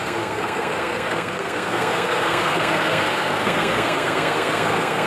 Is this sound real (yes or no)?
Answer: no